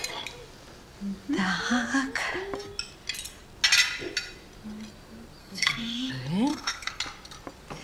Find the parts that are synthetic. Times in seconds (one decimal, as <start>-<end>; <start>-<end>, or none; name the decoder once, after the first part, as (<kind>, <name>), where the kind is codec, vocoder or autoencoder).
5.4-6.1 (codec, SNAC); 6.5-7.0